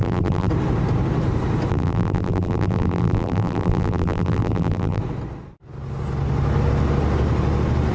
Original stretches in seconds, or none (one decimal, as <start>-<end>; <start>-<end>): 0.5-1.7; 5.0-7.9